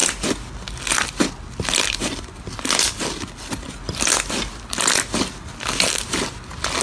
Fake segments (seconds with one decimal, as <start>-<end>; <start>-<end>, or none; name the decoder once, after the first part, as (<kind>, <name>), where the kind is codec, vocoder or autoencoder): none